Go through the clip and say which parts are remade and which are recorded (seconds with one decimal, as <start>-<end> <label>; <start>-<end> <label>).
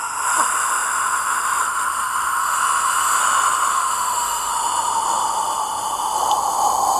0.0-2.4 recorded; 2.4-3.2 remade; 3.2-3.7 recorded; 3.7-4.5 remade; 4.5-7.0 recorded